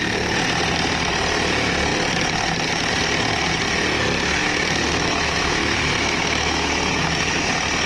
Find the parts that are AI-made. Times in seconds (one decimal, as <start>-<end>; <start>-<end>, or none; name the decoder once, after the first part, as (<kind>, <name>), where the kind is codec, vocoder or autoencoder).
4.4-7.5 (autoencoder, DAC-VAE)